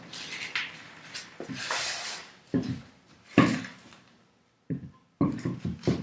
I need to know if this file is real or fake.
fake